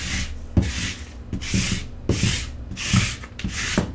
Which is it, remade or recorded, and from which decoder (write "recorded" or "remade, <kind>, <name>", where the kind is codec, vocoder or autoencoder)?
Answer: recorded